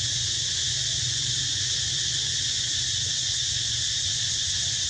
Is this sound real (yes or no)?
no